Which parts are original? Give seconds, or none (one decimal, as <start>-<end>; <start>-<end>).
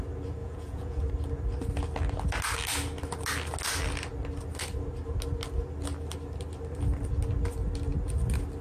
0.0-0.4; 1.1-8.6